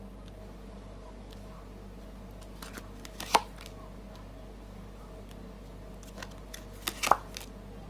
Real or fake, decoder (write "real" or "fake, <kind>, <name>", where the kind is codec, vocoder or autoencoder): real